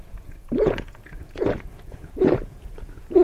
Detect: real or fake fake